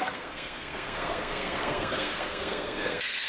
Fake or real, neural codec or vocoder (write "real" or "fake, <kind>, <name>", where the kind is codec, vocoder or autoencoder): fake, codec, SNAC